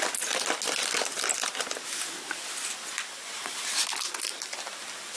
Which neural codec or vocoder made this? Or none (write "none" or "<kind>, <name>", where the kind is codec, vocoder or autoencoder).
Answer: none